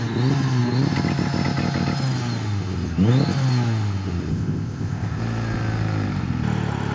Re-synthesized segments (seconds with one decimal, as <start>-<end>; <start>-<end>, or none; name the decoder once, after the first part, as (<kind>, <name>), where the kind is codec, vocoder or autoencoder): 4.3-5.2 (codec, ZipCodec)